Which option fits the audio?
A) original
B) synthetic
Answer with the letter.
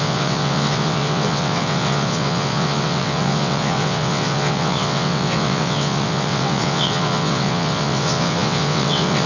B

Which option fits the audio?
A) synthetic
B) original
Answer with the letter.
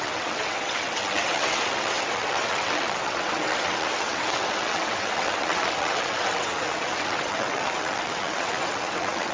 A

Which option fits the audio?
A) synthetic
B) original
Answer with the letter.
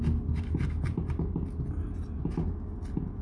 B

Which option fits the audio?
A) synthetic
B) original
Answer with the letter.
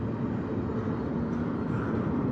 B